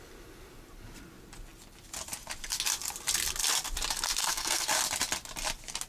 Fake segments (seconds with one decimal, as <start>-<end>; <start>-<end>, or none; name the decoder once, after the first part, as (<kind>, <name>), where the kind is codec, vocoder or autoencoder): 4.2-4.7 (codec, SNAC)